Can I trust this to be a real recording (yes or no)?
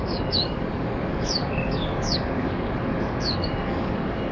no